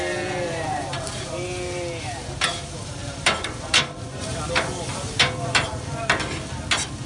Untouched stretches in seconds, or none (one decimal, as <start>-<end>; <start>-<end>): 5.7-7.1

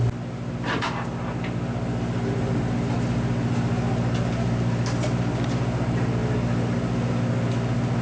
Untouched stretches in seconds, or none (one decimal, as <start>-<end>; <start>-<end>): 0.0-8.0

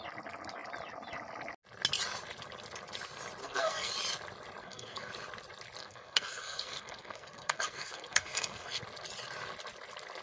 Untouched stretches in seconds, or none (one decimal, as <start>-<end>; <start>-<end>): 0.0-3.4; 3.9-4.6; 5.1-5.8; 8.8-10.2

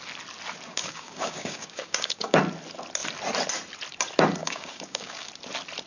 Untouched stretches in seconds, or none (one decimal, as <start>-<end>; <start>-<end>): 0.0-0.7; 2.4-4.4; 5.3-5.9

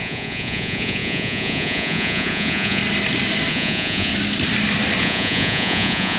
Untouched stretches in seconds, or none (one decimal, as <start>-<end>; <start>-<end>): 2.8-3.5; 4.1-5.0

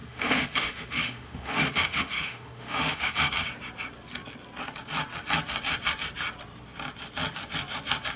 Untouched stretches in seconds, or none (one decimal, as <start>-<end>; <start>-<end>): 3.3-8.2

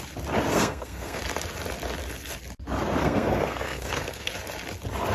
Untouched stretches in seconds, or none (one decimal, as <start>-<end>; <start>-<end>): 0.0-0.5; 1.2-3.0; 4.3-5.1